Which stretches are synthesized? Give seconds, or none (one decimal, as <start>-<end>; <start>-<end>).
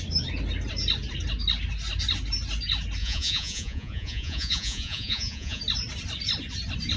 3.0-5.6